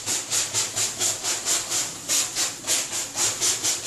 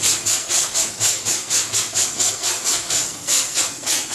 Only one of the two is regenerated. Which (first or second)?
second